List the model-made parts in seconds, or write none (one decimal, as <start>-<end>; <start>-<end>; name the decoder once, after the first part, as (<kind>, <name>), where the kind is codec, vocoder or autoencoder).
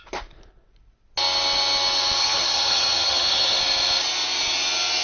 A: 2.2-3.6 (vocoder, HiFi-GAN)